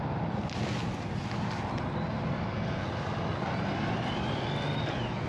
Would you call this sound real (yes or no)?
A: yes